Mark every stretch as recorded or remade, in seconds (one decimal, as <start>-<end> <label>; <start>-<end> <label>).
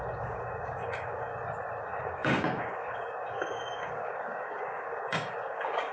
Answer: 0.0-1.3 remade; 1.3-1.8 recorded; 1.8-5.9 remade